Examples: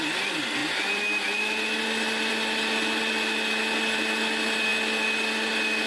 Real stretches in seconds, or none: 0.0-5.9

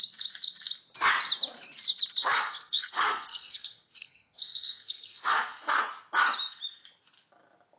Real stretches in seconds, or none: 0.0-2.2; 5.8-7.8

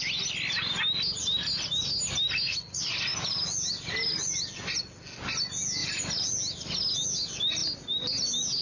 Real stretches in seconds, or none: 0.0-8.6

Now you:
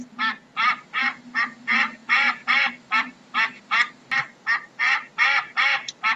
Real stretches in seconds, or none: 0.0-6.2

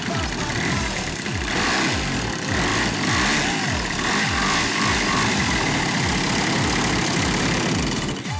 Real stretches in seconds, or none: 0.0-8.4